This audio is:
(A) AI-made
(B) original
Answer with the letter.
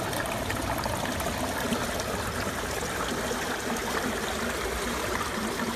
B